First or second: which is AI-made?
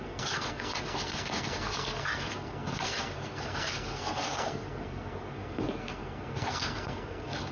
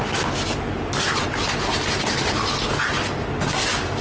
first